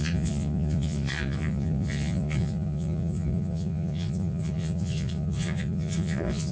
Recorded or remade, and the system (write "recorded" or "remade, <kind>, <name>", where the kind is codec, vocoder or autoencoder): remade, vocoder, Vocos